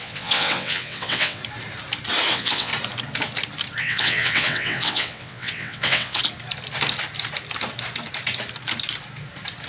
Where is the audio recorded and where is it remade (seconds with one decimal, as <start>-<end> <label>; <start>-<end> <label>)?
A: 0.0-1.4 remade; 1.4-2.3 recorded; 2.3-2.7 remade; 2.7-3.8 recorded; 3.8-6.2 remade; 6.2-9.7 recorded

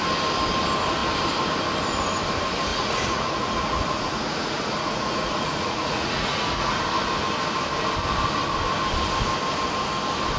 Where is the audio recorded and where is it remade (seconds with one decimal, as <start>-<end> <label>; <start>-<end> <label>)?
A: 0.0-2.7 recorded; 2.7-6.8 remade; 6.8-10.4 recorded